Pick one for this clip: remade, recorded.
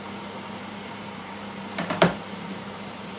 remade